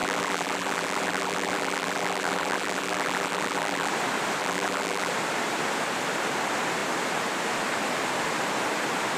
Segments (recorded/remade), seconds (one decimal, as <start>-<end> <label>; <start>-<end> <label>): 0.0-3.9 remade; 3.9-4.4 recorded; 4.4-5.1 remade; 5.1-9.2 recorded